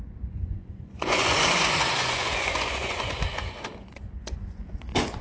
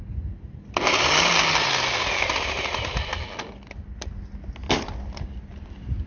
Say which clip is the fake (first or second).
first